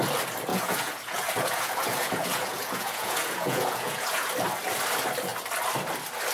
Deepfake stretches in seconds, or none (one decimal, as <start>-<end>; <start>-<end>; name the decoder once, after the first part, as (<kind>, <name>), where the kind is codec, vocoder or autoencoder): 0.5-4.3 (vocoder, Vocos)